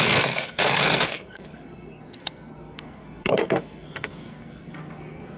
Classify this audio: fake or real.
fake